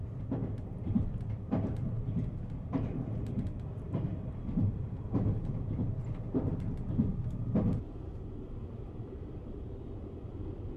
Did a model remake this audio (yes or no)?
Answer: yes